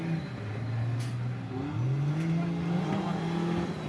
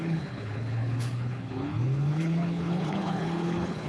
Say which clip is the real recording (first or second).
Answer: first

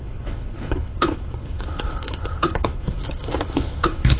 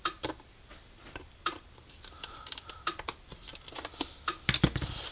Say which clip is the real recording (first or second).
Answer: second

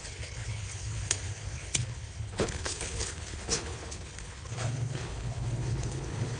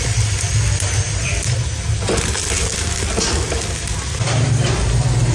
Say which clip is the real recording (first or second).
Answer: second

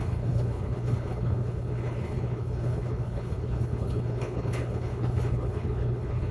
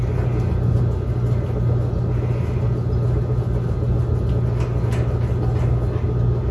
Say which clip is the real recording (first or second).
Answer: second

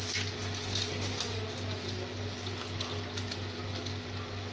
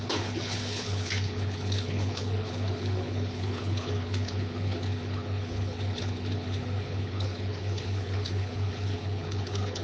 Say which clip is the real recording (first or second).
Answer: first